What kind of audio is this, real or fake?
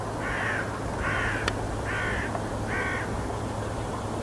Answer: real